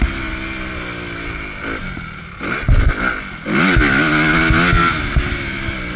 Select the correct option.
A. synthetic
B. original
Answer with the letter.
B